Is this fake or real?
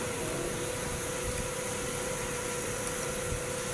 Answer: fake